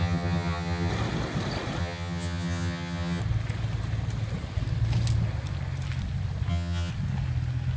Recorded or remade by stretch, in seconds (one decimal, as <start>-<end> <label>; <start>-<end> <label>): 0.0-0.9 remade; 0.9-1.8 recorded; 1.8-3.2 remade; 3.2-6.5 recorded; 6.5-6.9 remade; 6.9-7.8 recorded